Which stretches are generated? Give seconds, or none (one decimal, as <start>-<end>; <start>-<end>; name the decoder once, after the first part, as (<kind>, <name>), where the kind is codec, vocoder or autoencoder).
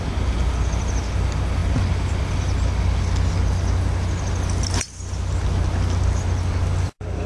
none